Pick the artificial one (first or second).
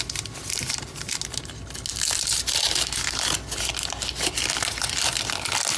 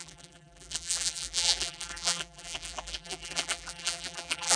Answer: second